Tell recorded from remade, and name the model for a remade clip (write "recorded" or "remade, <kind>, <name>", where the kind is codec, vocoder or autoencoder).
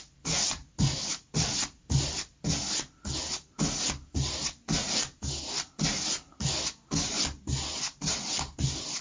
recorded